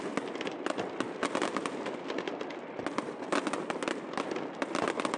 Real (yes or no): yes